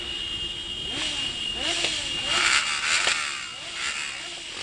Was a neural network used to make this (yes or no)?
no